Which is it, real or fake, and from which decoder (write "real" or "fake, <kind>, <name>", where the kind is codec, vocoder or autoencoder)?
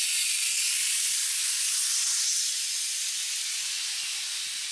real